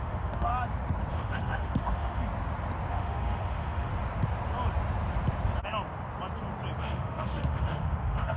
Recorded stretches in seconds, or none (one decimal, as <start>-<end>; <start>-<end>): 0.5-1.1; 2.2-2.9; 3.9-6.8

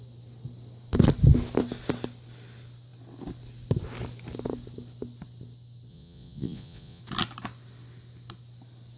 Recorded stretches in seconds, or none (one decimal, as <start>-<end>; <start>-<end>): 0.0-5.9; 7.0-9.0

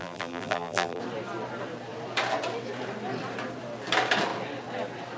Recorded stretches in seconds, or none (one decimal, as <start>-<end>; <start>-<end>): 1.0-5.2